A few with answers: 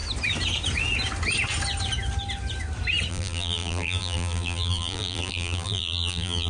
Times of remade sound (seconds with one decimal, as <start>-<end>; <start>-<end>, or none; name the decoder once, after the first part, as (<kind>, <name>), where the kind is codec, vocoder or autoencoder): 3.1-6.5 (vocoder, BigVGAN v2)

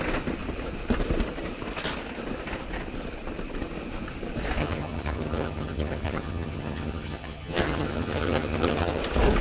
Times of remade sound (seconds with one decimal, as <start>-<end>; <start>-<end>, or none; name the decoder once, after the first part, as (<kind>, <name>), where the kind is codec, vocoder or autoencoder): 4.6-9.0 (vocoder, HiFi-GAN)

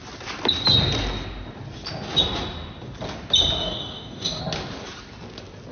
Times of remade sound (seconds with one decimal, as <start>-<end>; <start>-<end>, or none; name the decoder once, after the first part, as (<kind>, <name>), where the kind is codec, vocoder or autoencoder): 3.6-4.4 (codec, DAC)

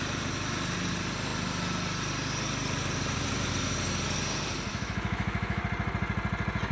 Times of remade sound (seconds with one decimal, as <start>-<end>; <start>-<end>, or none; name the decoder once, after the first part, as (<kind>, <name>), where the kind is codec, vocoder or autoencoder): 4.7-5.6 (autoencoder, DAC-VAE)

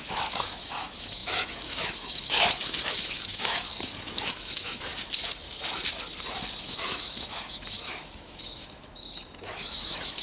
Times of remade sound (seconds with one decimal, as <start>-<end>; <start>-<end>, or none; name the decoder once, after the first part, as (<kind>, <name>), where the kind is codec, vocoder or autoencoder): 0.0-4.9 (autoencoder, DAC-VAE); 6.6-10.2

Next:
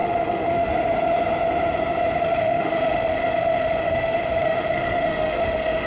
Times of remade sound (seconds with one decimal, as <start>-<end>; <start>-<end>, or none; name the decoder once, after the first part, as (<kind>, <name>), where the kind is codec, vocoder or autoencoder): 0.0-0.7 (autoencoder, DAC-VAE); 2.2-5.9